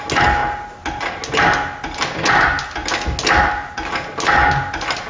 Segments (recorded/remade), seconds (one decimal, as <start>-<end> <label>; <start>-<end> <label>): 0.0-5.1 recorded